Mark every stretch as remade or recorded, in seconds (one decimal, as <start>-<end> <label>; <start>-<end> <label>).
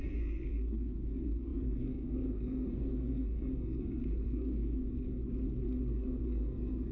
0.0-5.2 remade; 5.2-5.9 recorded; 5.9-6.9 remade